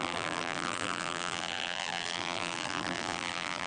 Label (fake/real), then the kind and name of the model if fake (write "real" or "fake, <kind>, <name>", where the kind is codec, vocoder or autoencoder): fake, vocoder, BigVGAN v2